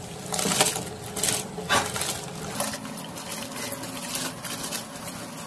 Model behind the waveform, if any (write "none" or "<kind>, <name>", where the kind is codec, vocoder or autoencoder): none